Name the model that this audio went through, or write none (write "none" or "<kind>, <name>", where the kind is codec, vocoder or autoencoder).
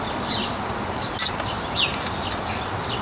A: none